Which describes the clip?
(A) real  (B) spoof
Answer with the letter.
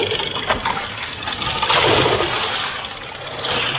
A